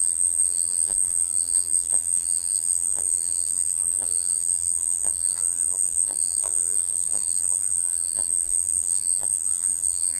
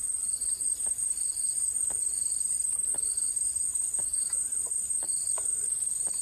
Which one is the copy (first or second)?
first